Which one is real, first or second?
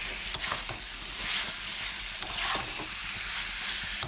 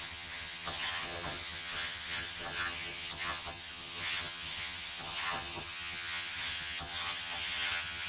first